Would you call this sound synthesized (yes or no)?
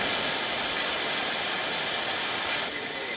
no